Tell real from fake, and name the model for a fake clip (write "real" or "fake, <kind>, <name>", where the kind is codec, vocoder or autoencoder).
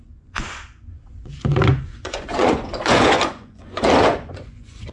fake, vocoder, Vocos